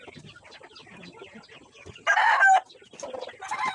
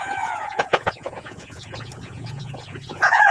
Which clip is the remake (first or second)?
second